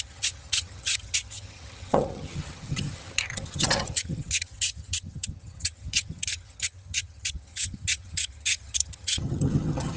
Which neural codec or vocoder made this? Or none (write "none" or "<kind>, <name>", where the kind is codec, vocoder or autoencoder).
vocoder, HiFi-GAN